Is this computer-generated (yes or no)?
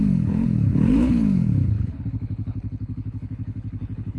yes